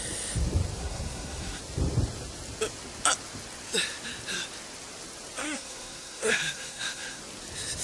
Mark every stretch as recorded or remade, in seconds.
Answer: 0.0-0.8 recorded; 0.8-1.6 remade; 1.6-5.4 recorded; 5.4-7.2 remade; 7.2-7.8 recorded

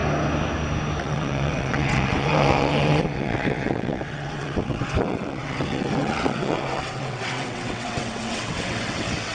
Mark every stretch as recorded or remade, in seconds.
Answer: 0.0-1.0 recorded; 1.0-9.3 remade

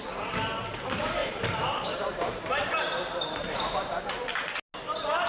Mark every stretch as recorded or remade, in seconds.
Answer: 0.0-1.2 recorded; 1.2-4.4 remade; 4.4-5.3 recorded

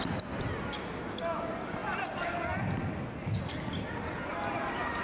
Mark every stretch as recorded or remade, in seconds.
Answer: 0.0-5.0 recorded

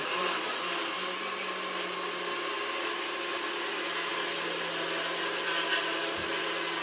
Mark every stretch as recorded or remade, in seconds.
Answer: 0.0-6.8 recorded

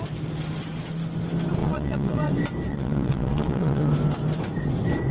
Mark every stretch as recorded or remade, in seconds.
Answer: 0.0-1.6 recorded; 1.6-2.3 remade; 2.3-2.7 recorded; 2.7-3.9 remade; 3.9-5.1 recorded

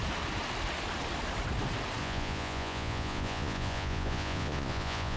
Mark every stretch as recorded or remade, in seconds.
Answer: 0.0-2.0 recorded; 2.0-5.2 remade

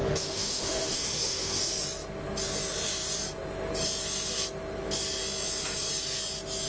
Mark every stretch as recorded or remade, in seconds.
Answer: 0.0-1.6 remade; 1.6-6.7 recorded